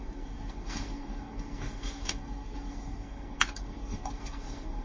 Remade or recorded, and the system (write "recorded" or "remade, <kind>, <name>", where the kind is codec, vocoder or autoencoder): remade, codec, SNAC